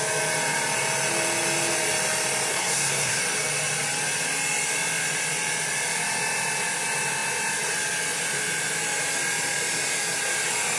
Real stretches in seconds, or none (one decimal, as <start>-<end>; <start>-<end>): 0.0-2.5; 3.2-10.8